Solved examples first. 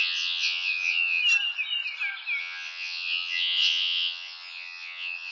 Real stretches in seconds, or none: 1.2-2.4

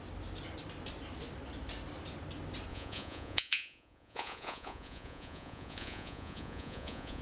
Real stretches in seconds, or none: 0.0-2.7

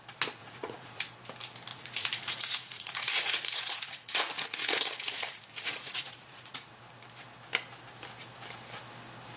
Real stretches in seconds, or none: 0.0-0.4; 1.0-1.7; 6.7-9.4

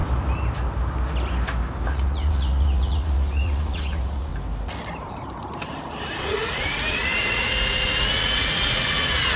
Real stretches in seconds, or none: 0.0-1.9; 4.3-6.2

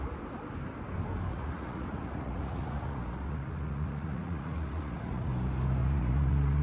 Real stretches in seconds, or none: 0.0-1.3; 5.3-5.8

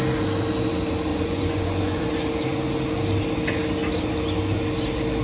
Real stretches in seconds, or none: 0.0-1.1; 2.0-5.2